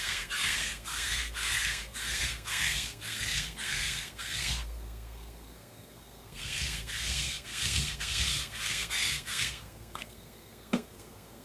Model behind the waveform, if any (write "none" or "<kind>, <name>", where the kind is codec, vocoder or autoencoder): codec, SNAC